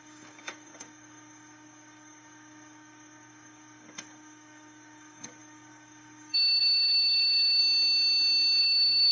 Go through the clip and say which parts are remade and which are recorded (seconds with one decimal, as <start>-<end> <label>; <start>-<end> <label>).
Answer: 0.0-7.6 remade; 7.6-8.6 recorded; 8.6-9.1 remade